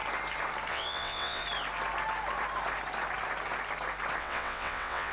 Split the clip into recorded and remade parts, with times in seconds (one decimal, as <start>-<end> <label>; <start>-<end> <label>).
0.0-0.7 recorded; 0.7-1.4 remade; 1.4-4.2 recorded; 4.2-5.1 remade